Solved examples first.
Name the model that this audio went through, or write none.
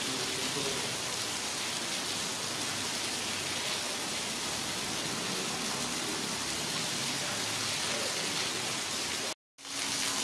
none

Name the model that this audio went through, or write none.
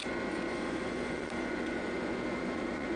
vocoder, Vocos